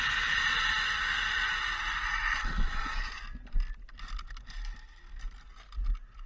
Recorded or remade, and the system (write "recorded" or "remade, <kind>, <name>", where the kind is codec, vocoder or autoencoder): recorded